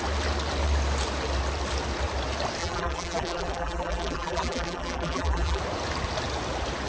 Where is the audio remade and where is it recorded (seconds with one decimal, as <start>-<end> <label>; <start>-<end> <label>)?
0.0-2.6 recorded; 2.6-5.6 remade; 5.6-6.9 recorded